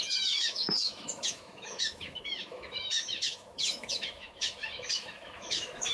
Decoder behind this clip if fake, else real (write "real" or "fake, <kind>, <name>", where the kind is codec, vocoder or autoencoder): fake, autoencoder, DAC-VAE